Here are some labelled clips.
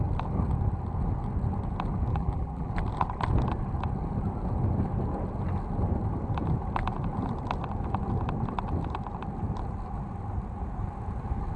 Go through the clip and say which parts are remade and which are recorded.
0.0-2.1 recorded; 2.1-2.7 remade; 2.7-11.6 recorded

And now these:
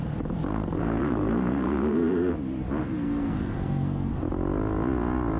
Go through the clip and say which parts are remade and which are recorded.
0.0-0.5 recorded; 0.5-2.3 remade; 2.3-2.8 recorded; 2.8-4.2 remade; 4.2-5.4 recorded

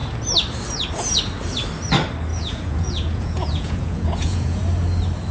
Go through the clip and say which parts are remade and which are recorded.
0.0-2.3 recorded; 2.3-4.6 remade; 4.6-5.3 recorded